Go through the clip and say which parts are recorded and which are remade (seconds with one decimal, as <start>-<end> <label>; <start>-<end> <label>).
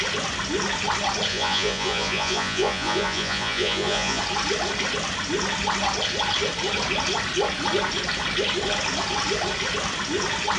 0.0-1.3 recorded; 1.3-4.2 remade; 4.2-10.6 recorded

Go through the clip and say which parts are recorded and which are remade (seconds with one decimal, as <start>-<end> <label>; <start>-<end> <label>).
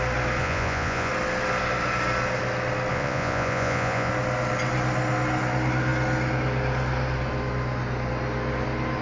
0.0-0.4 recorded; 0.4-1.1 remade; 1.1-2.9 recorded; 2.9-4.1 remade; 4.1-9.0 recorded